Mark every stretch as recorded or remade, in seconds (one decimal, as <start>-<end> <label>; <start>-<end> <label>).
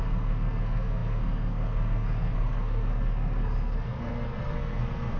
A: 0.0-5.2 remade